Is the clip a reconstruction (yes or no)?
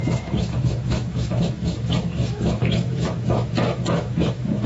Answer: yes